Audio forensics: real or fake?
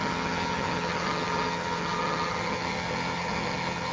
fake